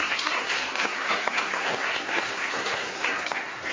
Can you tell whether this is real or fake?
fake